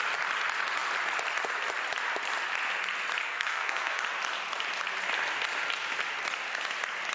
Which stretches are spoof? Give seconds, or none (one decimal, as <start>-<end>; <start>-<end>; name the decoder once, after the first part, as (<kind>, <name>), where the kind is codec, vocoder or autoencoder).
3.2-4.0 (codec, SNAC)